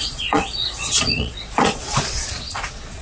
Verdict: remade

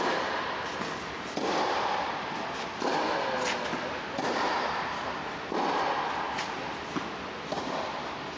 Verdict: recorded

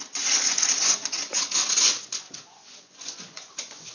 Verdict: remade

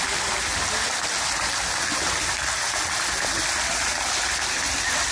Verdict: recorded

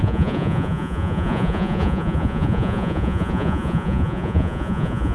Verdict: remade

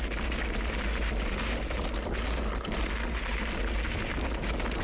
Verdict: recorded